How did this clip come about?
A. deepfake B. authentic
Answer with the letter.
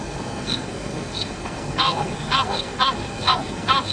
A